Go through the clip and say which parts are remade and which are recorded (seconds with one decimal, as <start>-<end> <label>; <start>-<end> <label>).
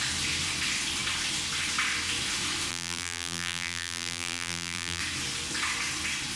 0.0-2.7 recorded; 2.7-5.0 remade; 5.0-6.4 recorded